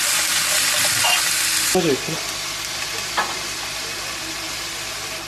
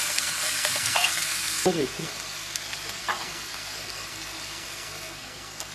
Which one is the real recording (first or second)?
first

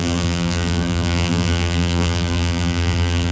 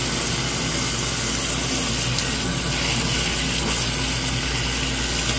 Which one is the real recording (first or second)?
second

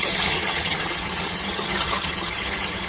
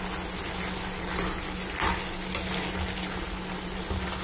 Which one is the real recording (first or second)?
second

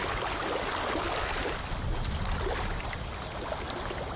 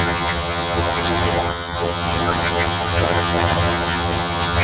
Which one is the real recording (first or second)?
first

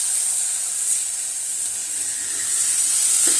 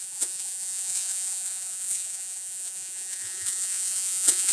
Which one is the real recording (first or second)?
first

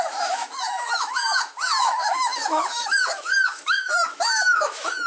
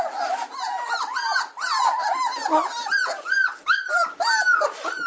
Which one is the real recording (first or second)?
second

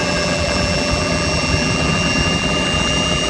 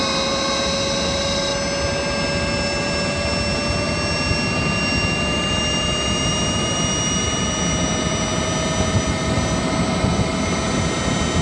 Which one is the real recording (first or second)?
second